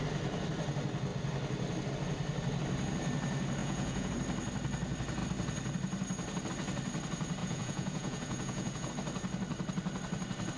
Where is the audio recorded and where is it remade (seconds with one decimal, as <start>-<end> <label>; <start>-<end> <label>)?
0.0-3.6 recorded; 3.6-4.1 remade; 4.1-7.4 recorded; 7.4-8.9 remade; 8.9-10.6 recorded